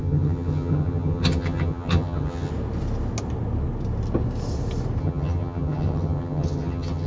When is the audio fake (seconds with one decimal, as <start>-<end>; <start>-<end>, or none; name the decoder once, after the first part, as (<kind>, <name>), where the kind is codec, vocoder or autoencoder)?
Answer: 0.0-2.5 (vocoder, HiFi-GAN); 5.0-7.1